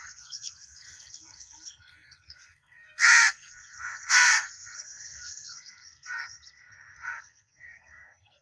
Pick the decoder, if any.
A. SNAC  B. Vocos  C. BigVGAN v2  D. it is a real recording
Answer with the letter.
A